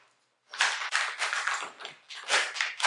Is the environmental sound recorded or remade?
recorded